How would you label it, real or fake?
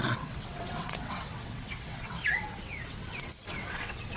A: fake